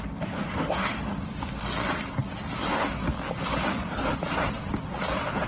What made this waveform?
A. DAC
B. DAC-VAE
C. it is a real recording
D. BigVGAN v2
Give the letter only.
C